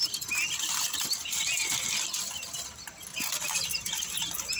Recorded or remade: recorded